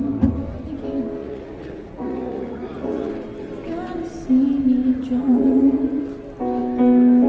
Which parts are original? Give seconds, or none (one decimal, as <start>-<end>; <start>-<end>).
0.0-1.2; 3.1-4.8; 6.0-7.3

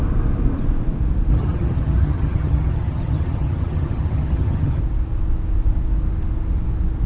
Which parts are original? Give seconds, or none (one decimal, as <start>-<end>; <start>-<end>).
0.0-1.3; 4.8-7.1

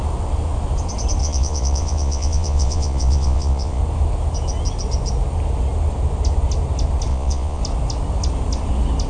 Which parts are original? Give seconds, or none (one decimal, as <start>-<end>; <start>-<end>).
0.0-1.2; 3.8-7.1; 7.6-9.1